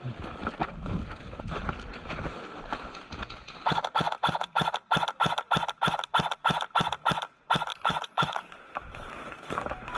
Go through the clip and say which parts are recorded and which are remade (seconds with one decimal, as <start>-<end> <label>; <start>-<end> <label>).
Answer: 0.0-7.7 recorded; 7.7-8.5 remade; 8.5-10.0 recorded

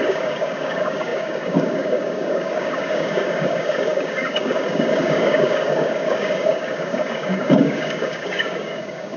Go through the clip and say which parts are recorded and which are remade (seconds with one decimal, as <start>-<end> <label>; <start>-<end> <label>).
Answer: 0.0-9.2 remade

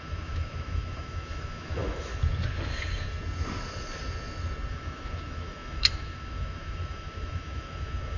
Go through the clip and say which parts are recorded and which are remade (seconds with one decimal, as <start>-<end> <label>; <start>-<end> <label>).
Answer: 0.0-2.1 remade; 2.1-4.7 recorded; 4.7-8.2 remade

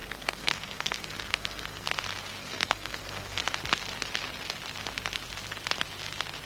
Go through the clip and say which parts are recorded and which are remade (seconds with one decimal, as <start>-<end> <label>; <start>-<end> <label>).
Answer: 0.0-1.9 remade; 1.9-2.4 recorded; 2.4-3.4 remade; 3.4-6.5 recorded